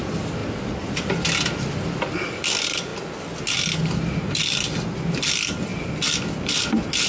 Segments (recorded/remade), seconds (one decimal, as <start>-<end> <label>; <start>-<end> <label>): 0.0-7.1 recorded